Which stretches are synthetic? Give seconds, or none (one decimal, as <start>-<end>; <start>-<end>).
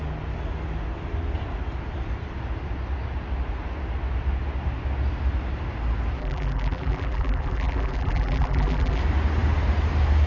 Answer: 6.2-9.0